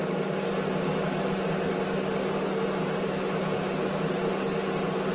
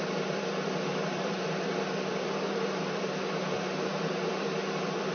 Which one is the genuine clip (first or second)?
first